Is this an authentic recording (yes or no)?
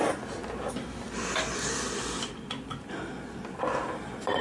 yes